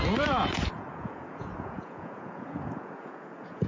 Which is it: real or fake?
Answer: fake